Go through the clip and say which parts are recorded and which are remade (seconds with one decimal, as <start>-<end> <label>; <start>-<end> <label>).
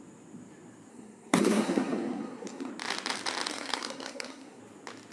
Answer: 0.0-0.9 recorded; 0.9-2.7 remade; 2.7-3.5 recorded; 3.5-4.6 remade; 4.6-5.1 recorded